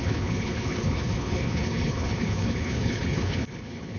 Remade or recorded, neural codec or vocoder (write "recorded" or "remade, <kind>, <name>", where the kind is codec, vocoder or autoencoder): remade, codec, HILCodec